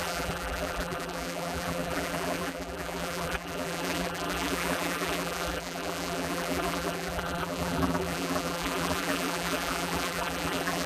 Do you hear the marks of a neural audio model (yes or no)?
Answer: yes